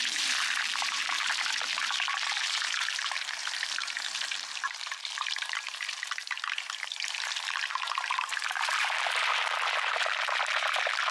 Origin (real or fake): fake